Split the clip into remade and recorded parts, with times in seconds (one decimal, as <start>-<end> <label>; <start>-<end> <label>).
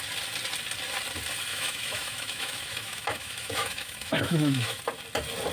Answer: 0.0-1.5 recorded; 1.5-4.8 remade; 4.8-5.5 recorded